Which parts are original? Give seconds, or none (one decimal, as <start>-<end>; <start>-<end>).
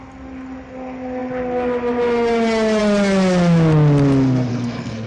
0.0-4.5